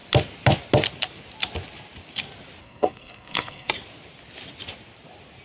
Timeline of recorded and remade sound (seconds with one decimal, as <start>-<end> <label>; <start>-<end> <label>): 0.0-2.6 recorded; 2.6-3.7 remade; 3.7-5.4 recorded